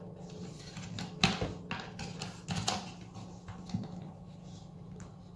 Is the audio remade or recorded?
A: recorded